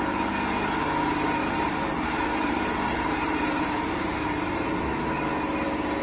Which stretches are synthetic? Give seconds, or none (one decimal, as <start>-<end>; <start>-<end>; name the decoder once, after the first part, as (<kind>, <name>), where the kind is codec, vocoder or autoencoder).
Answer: 1.4-4.8 (vocoder, BigVGAN v2)